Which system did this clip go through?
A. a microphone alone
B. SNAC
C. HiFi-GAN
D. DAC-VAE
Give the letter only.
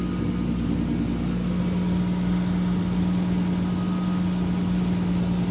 A